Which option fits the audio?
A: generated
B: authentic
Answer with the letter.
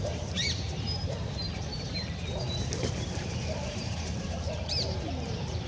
A